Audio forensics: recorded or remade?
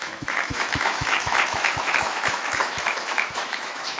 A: remade